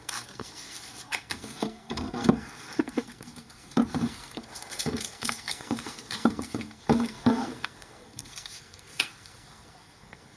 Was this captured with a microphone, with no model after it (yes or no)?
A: no